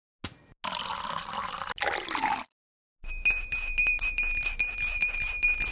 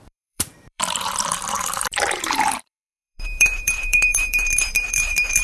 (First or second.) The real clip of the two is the first